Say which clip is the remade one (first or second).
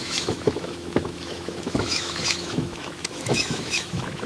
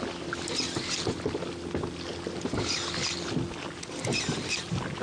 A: first